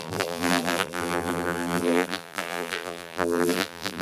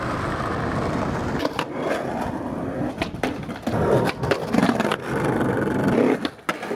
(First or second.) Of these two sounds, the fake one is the first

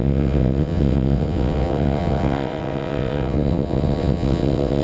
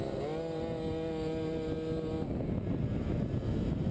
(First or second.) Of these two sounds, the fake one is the first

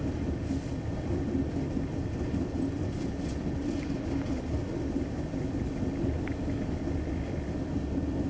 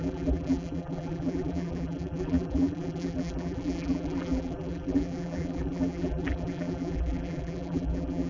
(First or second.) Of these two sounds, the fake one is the second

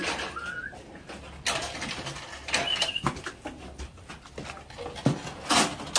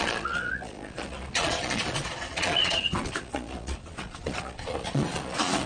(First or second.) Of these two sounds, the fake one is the second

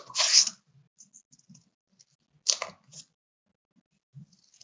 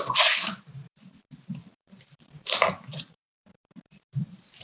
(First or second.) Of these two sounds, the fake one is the second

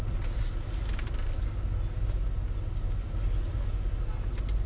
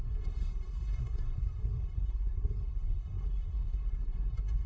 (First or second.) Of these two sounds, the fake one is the second